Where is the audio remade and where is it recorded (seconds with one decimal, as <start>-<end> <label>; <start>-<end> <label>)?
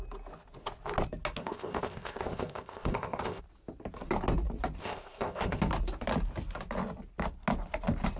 0.0-1.4 recorded; 1.4-3.4 remade; 3.4-4.8 recorded; 4.8-5.6 remade; 5.6-8.2 recorded